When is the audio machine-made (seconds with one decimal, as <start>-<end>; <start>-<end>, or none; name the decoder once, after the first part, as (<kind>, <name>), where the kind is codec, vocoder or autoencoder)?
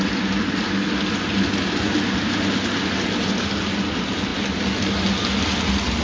none